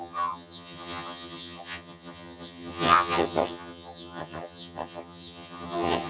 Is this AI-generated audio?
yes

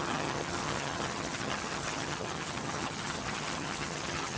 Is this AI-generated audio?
yes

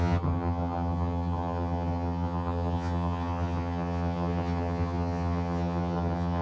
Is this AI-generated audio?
yes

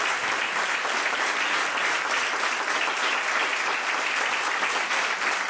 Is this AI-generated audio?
no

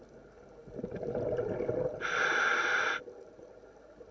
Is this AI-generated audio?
no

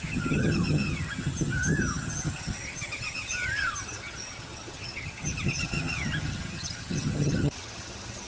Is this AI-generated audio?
yes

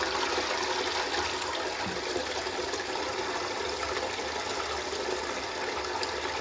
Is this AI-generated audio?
no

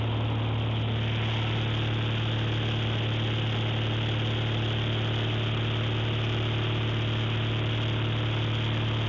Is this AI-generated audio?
no